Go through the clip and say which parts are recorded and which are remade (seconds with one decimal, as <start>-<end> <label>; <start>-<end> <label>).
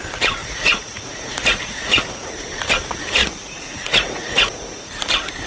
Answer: 0.0-0.4 recorded; 0.4-2.2 remade; 2.2-3.2 recorded; 3.2-4.9 remade; 4.9-5.5 recorded